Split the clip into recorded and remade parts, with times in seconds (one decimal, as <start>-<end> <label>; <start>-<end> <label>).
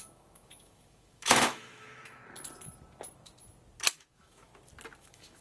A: 0.0-2.2 remade; 2.2-3.9 recorded; 3.9-4.5 remade; 4.5-5.0 recorded; 5.0-5.4 remade